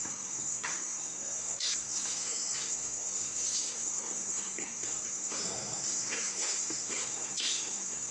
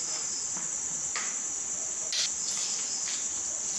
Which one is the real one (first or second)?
second